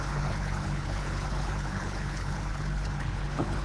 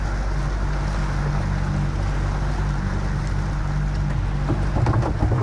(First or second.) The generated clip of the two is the first